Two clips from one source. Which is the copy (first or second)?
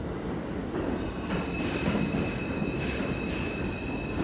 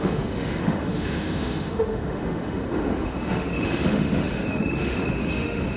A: second